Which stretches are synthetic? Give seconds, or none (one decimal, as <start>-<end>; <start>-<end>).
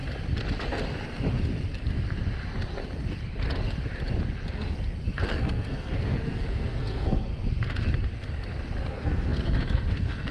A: 5.2-7.3; 8.9-10.3